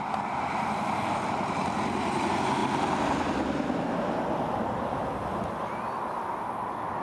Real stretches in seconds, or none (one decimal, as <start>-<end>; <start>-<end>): 0.0-7.0

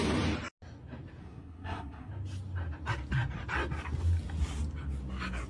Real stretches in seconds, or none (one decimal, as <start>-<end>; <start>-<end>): 0.0-1.2; 2.1-5.5

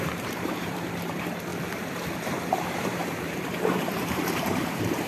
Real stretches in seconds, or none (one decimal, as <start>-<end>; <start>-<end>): 1.5-2.5

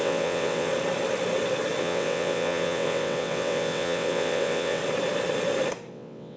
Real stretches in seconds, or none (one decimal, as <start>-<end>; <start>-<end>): 0.7-1.8; 4.8-5.9

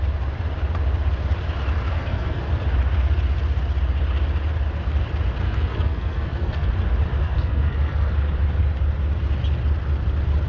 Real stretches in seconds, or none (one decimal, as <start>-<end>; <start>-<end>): 0.0-1.9; 2.4-5.4; 6.7-7.2; 8.1-10.5

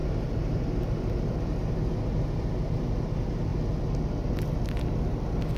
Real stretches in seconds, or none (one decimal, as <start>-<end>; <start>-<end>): 0.0-5.6